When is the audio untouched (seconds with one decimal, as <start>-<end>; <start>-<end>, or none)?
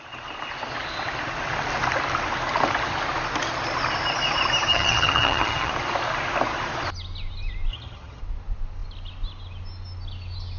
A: 0.0-4.7; 5.7-7.7; 8.2-10.6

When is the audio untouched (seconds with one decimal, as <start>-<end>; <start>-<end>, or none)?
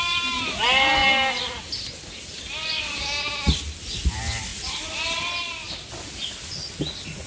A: 0.0-7.3